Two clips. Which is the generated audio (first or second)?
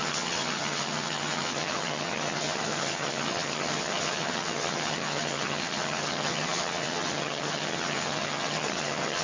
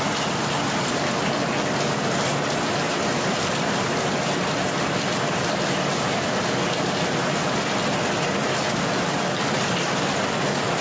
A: first